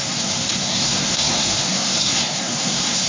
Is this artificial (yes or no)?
yes